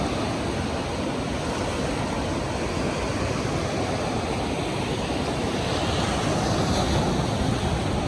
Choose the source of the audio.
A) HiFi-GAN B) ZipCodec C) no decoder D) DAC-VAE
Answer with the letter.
C